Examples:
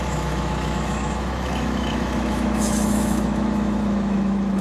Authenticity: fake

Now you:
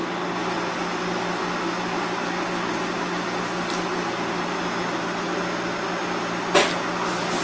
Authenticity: real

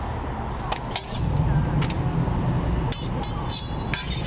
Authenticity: real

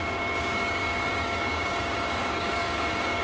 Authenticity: fake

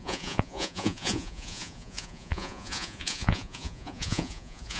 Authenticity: fake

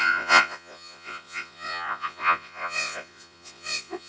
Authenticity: fake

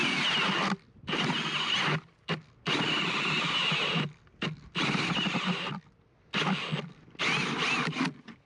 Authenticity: real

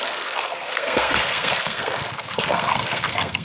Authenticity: fake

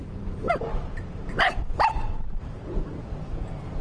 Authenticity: fake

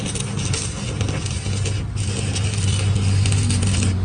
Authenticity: real